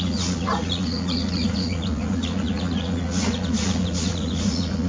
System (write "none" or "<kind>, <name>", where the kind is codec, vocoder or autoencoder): vocoder, Vocos